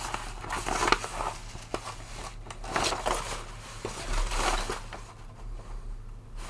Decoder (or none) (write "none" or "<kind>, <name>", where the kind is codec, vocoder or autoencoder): none